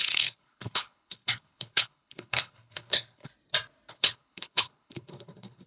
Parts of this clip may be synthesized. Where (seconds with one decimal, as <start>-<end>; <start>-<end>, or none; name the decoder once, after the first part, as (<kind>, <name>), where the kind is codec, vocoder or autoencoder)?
0.0-3.3 (codec, HILCodec); 3.9-5.7